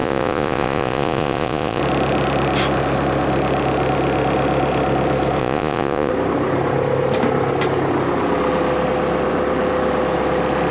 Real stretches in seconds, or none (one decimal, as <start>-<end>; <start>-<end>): 1.8-5.4; 6.1-10.7